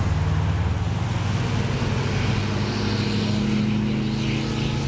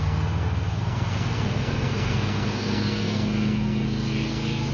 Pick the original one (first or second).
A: first